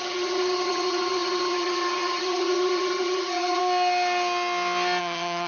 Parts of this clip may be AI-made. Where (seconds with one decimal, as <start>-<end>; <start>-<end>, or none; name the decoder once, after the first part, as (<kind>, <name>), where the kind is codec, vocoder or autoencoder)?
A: 0.0-3.6 (vocoder, HiFi-GAN); 5.0-5.5